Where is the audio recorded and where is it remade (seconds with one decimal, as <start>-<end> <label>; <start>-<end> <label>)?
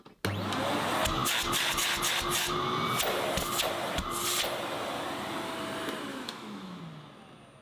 0.0-6.1 recorded; 6.1-6.8 remade; 6.8-7.6 recorded